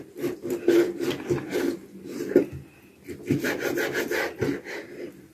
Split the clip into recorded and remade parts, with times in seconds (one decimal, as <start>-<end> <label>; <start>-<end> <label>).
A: 0.0-5.3 recorded